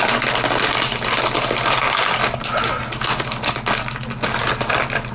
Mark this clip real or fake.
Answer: real